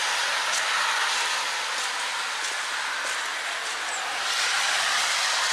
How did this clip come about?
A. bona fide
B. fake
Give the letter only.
A